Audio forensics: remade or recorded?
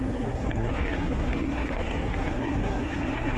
remade